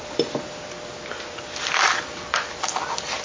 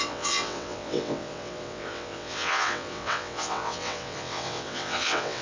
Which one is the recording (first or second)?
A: first